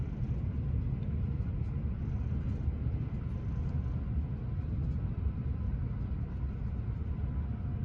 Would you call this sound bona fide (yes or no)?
yes